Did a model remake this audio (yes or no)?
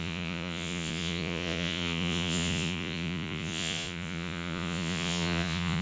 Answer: yes